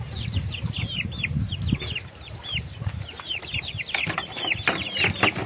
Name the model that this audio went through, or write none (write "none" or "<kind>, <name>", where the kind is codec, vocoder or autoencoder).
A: vocoder, BigVGAN v2